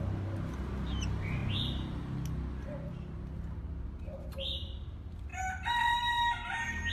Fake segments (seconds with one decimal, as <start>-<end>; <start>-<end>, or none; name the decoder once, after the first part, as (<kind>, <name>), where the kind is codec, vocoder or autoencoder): none